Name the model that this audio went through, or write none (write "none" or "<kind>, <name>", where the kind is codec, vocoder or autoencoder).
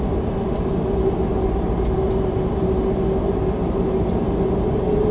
none